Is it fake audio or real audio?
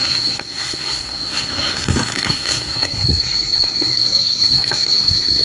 fake